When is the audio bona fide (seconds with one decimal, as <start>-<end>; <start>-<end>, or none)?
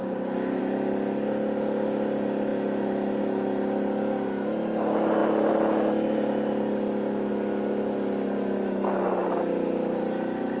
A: 0.6-10.6